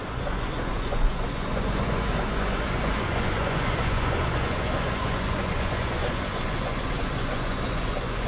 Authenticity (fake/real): fake